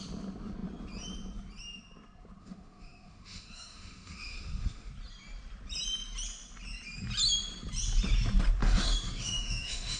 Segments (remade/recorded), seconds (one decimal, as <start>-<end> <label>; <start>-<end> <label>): 0.0-2.4 recorded; 2.4-4.9 remade; 4.9-8.6 recorded; 8.6-10.0 remade

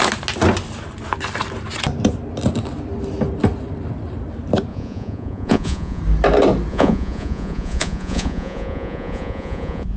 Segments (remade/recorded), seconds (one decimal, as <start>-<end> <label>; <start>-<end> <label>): 0.0-4.7 recorded; 4.7-6.0 remade; 6.0-6.7 recorded; 6.7-10.0 remade

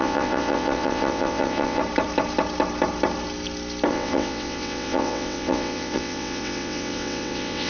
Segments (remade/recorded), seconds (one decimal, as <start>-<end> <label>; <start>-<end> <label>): 0.0-1.8 remade; 1.8-3.9 recorded; 3.9-7.7 remade

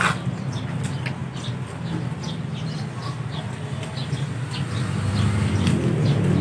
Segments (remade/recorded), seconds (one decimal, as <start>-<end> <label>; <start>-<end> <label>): 0.0-6.4 recorded